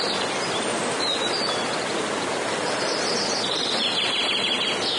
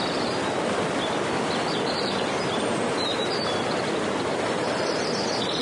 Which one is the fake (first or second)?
second